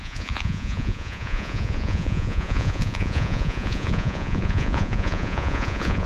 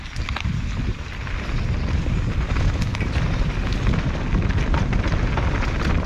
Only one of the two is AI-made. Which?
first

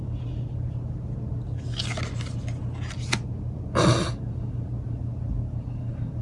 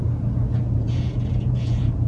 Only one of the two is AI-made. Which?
second